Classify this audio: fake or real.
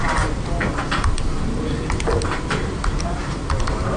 real